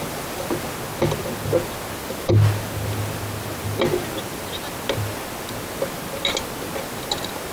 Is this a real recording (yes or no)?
yes